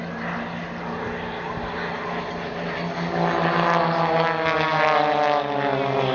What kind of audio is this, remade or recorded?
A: recorded